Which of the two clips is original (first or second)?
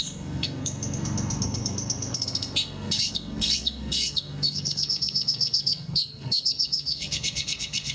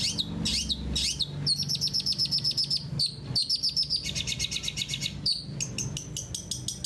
second